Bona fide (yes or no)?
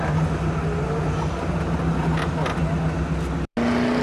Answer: yes